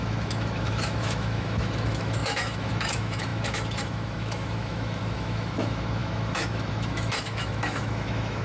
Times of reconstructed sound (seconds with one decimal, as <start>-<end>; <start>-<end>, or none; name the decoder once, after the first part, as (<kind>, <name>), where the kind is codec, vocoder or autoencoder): 0.0-8.4 (autoencoder, DAC-VAE)